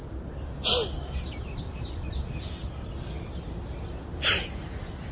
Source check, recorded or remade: recorded